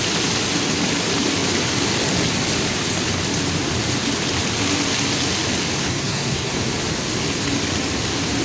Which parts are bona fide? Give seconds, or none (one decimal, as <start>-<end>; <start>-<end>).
0.0-5.8; 6.5-8.4